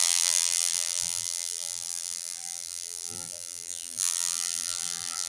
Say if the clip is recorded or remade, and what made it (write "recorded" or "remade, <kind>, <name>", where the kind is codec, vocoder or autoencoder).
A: remade, vocoder, BigVGAN v2